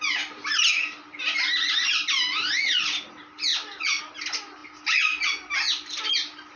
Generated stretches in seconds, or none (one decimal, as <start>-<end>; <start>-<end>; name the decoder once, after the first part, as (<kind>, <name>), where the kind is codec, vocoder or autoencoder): none